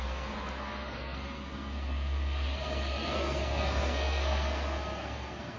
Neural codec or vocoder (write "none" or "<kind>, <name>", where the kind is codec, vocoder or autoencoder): codec, SNAC